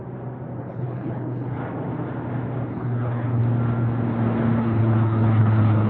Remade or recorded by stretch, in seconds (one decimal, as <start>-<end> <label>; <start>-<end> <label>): 0.0-0.6 recorded; 0.6-1.6 remade; 1.6-2.7 recorded; 2.7-3.4 remade; 3.4-4.6 recorded; 4.6-5.9 remade